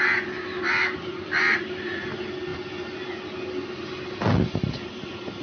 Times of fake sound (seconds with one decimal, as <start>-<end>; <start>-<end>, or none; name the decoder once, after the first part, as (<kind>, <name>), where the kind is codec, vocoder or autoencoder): none